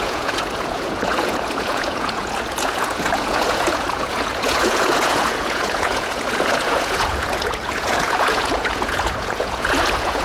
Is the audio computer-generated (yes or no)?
yes